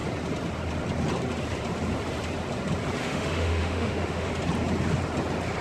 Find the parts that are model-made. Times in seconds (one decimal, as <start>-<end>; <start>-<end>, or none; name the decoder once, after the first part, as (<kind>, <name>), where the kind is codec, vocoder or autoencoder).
3.0-4.3 (autoencoder, DAC-VAE)